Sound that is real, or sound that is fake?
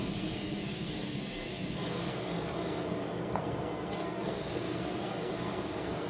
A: fake